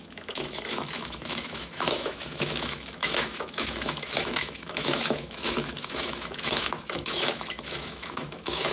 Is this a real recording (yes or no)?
no